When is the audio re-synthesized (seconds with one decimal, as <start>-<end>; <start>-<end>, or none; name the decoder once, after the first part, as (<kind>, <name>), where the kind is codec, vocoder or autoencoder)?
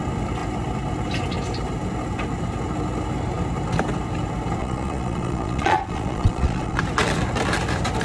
4.6-6.8 (vocoder, Vocos)